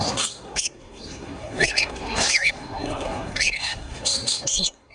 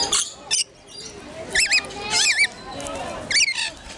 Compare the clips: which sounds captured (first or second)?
second